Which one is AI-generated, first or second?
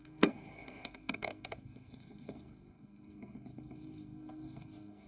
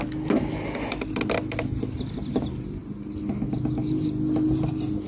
first